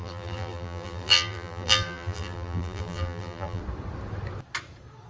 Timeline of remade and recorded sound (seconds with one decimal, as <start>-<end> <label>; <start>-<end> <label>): 0.0-3.6 remade; 3.6-5.1 recorded

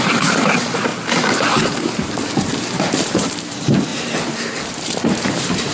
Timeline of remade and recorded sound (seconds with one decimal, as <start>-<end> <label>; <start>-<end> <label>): 0.0-0.9 remade; 0.9-3.0 recorded; 3.0-5.7 remade

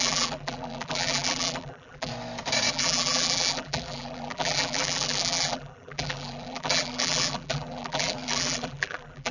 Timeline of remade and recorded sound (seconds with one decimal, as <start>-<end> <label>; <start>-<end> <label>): 0.0-2.1 remade; 2.1-2.7 recorded; 2.7-9.3 remade

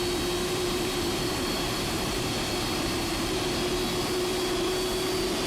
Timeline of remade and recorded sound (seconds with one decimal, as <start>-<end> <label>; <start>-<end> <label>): 0.0-0.4 recorded; 0.4-3.7 remade; 3.7-5.5 recorded